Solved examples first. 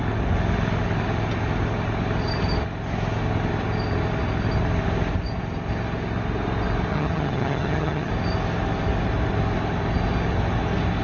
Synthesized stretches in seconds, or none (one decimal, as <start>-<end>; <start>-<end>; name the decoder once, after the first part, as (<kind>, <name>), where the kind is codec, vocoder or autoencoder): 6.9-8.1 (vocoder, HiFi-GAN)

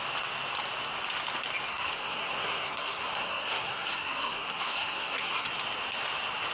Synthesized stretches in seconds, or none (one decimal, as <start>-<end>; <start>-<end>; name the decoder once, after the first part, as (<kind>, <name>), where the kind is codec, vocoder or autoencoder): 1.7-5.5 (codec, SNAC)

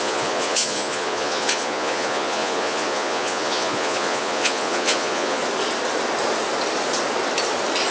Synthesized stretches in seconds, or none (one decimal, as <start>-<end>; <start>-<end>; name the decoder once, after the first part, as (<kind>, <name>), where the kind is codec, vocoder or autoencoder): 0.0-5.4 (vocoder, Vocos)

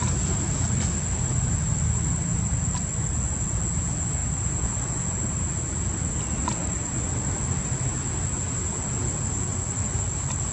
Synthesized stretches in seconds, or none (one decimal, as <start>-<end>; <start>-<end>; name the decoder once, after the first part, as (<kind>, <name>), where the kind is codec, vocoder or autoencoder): none

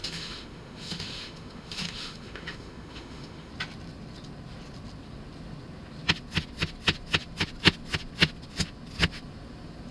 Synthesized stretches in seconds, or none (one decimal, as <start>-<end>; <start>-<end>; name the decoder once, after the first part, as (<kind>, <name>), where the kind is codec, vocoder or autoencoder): 0.0-3.5 (autoencoder, DAC-VAE)

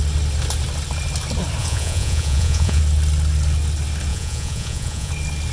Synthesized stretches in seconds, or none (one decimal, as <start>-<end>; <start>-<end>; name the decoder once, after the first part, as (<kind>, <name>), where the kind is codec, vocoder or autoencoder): 1.6-2.8 (vocoder, Vocos); 4.1-5.1